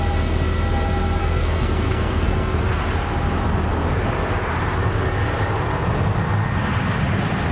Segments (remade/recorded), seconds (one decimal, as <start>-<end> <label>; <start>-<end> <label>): 0.0-1.2 recorded; 1.2-2.6 remade; 2.6-7.5 recorded